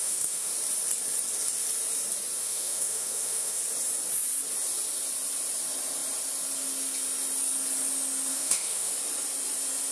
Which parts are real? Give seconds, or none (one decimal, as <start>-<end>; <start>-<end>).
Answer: 0.5-2.4; 3.6-8.3; 8.9-9.9